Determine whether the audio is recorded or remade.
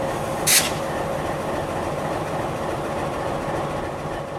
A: recorded